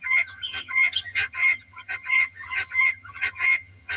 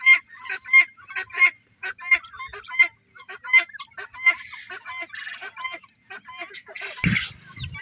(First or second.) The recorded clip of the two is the second